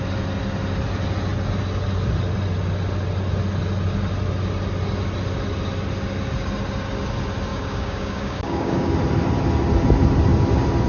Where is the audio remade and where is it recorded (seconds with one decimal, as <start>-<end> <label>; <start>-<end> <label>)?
0.0-7.5 recorded; 7.5-8.9 remade; 8.9-10.9 recorded